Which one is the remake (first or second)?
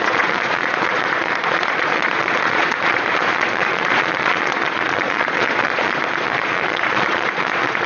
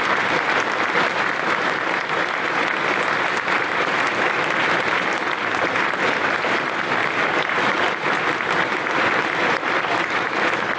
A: first